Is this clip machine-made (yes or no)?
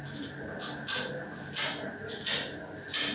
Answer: no